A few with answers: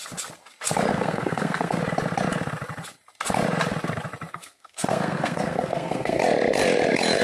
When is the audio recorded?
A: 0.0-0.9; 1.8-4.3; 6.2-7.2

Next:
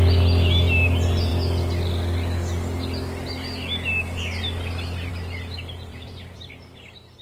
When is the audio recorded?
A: 0.0-5.9; 6.5-7.2

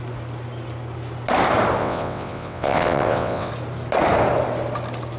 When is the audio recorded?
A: 0.0-1.8; 3.5-5.2

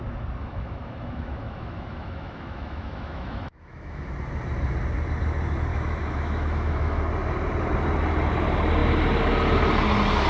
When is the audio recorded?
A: 0.0-0.4; 4.1-5.7; 7.0-10.3